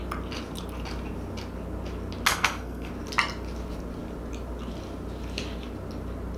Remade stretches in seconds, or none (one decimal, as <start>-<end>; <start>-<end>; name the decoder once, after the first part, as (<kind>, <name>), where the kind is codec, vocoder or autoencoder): 2.3-2.9 (codec, SNAC)